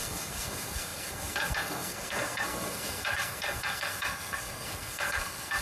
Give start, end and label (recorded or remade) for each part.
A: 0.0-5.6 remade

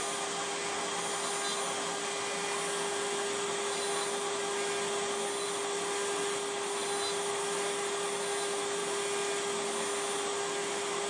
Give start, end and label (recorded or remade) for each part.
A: 0.0-11.1 recorded

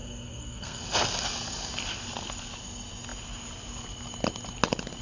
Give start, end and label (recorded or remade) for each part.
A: 0.0-0.8 remade; 0.8-5.0 recorded

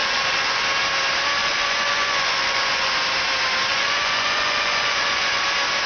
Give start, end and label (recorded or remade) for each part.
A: 0.0-0.6 remade; 0.6-1.4 recorded; 1.4-2.9 remade; 2.9-3.7 recorded; 3.7-5.4 remade; 5.4-5.9 recorded

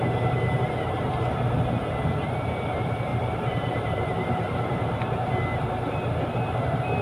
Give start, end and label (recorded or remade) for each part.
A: 0.0-3.1 recorded; 3.1-5.0 remade; 5.0-7.0 recorded

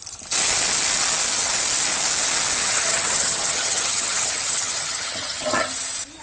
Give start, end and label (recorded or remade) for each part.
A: 0.0-2.6 recorded; 2.6-5.7 remade; 5.7-6.2 recorded